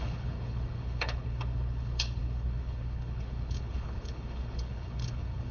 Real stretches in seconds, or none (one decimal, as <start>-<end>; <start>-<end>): none